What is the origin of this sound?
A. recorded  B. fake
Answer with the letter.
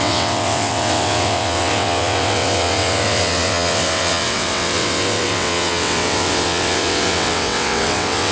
B